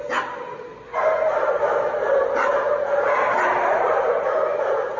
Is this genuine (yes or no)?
yes